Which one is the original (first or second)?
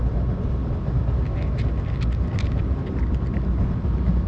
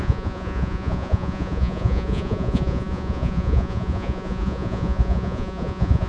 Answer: first